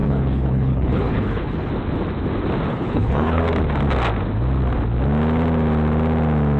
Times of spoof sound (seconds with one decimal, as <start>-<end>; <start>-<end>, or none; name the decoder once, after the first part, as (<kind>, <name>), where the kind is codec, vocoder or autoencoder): 0.0-1.7 (codec, HILCodec); 2.7-3.4